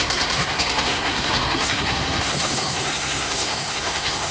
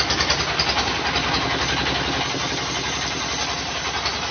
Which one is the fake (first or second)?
first